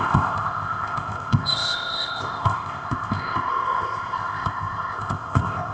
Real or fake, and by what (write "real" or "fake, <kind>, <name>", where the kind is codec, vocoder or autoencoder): fake, codec, ZipCodec